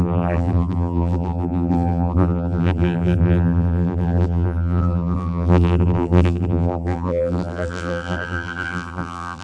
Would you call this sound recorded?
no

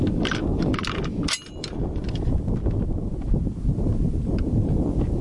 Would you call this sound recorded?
yes